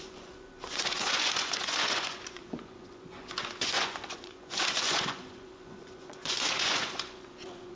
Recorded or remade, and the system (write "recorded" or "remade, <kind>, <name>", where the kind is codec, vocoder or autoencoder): remade, vocoder, Vocos